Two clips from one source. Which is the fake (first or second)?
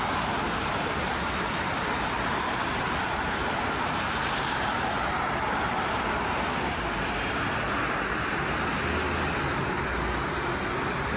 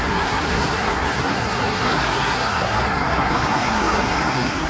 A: second